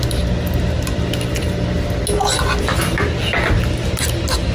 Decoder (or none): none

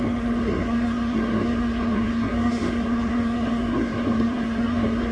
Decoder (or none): codec, SNAC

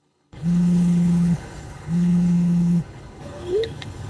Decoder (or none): codec, HILCodec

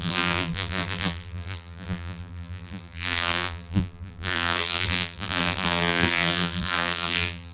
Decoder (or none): vocoder, BigVGAN v2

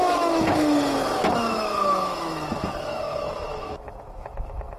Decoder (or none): autoencoder, DAC-VAE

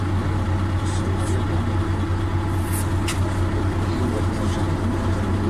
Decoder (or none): none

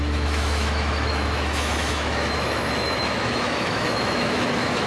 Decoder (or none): autoencoder, DAC-VAE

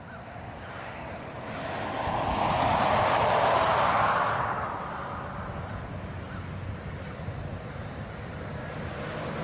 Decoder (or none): none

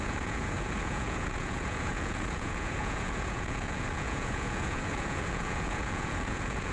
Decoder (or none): vocoder, Vocos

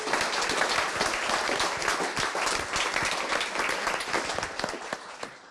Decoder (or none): none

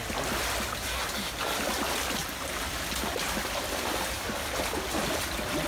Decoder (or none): none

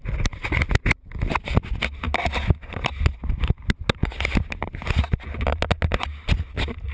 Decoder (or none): none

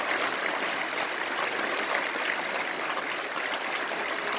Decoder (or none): none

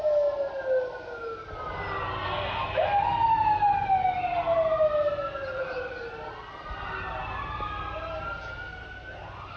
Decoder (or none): none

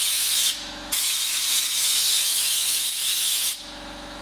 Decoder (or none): autoencoder, DAC-VAE